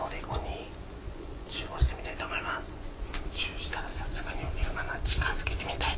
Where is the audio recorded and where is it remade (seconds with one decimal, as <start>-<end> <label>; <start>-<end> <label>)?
0.0-3.2 remade; 3.2-3.9 recorded; 3.9-5.6 remade; 5.6-6.0 recorded